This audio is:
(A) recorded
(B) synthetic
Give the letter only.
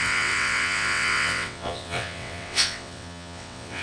B